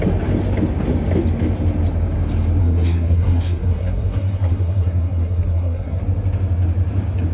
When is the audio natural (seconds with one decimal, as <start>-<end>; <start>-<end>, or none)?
0.0-2.6; 6.0-7.3